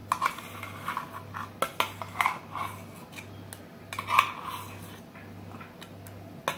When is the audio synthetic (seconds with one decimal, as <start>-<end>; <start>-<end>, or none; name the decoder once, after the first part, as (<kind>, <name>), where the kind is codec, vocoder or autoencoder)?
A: none